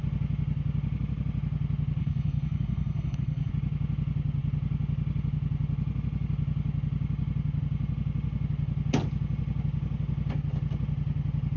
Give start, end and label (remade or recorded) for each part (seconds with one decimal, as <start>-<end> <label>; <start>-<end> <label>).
0.0-2.0 recorded; 2.0-3.5 remade; 3.5-11.6 recorded